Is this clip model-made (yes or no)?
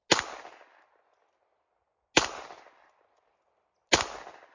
no